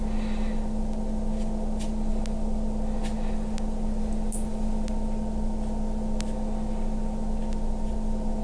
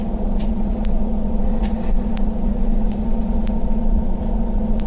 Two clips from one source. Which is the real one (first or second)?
first